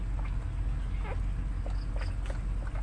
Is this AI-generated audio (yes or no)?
no